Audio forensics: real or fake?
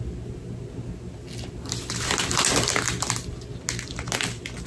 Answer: real